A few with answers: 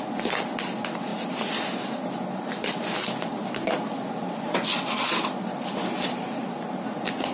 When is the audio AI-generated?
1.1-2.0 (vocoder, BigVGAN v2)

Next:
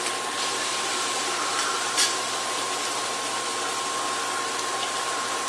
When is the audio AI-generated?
0.0-3.0 (vocoder, BigVGAN v2); 4.5-5.5

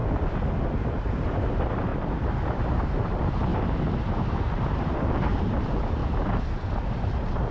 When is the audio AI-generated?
1.1-3.5 (vocoder, BigVGAN v2); 4.1-6.0; 6.9-7.5

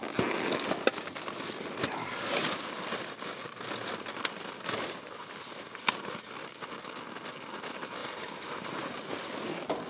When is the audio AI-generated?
8.0-8.9 (vocoder, BigVGAN v2)

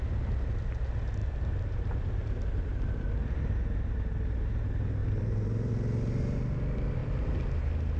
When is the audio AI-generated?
1.2-3.5 (vocoder, BigVGAN v2); 5.0-5.7